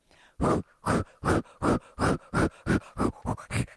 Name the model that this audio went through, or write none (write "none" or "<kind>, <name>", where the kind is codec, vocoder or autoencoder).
none